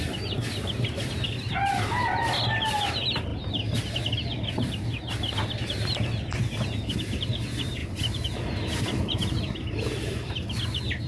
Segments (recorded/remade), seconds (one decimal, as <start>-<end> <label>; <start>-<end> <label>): 0.0-11.1 recorded